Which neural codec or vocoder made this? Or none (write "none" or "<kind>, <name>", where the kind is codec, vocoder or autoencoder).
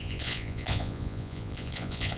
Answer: vocoder, Vocos